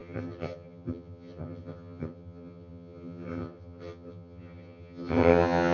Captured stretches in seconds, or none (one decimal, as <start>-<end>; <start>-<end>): none